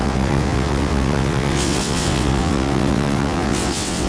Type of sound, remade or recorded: remade